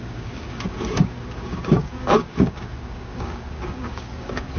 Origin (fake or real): fake